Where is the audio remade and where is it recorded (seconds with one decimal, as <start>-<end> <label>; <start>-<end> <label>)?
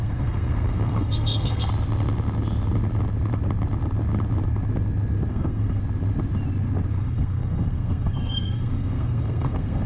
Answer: 0.0-1.7 remade; 1.7-5.3 recorded; 5.3-5.8 remade; 5.8-6.9 recorded; 6.9-9.9 remade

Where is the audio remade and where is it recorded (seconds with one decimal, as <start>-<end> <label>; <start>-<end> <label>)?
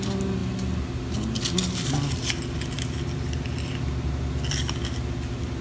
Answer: 0.0-5.6 recorded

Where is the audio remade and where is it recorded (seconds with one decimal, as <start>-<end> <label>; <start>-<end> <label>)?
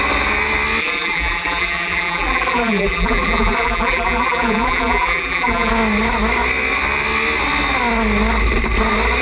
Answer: 0.0-0.8 recorded; 0.8-5.7 remade; 5.7-9.2 recorded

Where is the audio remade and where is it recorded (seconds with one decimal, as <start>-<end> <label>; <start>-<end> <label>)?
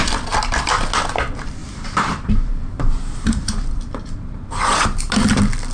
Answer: 0.0-1.6 recorded; 1.6-5.0 remade; 5.0-5.7 recorded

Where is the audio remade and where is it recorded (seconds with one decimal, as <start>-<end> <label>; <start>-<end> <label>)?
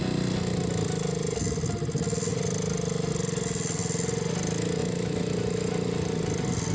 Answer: 0.0-6.7 recorded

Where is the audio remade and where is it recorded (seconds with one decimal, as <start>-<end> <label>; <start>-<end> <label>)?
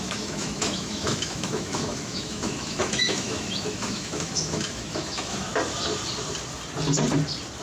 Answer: 0.0-5.5 remade; 5.5-7.6 recorded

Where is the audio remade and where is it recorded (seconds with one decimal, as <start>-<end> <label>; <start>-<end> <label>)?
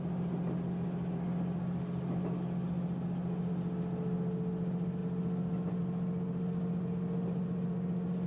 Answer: 0.0-8.3 recorded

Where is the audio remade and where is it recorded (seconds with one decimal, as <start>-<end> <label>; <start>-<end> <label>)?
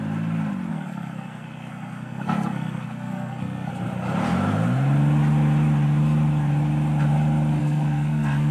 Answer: 0.0-0.7 recorded; 0.7-3.7 remade; 3.7-7.6 recorded; 7.6-8.5 remade